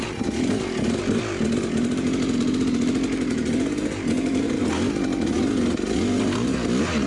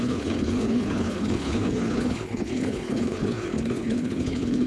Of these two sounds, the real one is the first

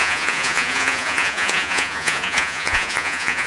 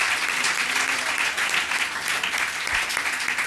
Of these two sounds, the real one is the second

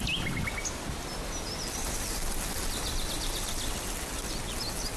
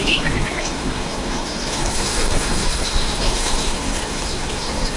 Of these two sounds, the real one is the first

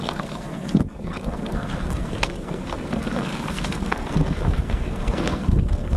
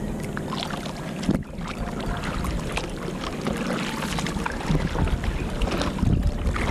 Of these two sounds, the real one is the second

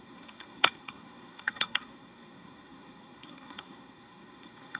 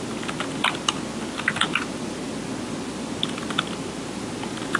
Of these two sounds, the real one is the second